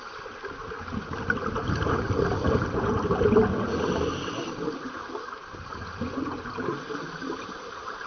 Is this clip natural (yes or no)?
yes